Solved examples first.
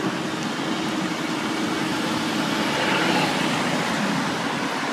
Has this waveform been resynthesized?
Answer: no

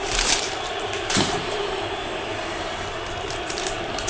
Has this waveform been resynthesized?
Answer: yes